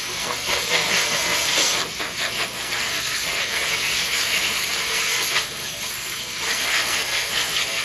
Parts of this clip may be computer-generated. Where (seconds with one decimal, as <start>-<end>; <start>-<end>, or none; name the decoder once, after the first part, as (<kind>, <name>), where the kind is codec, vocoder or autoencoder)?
0.0-7.8 (codec, SNAC)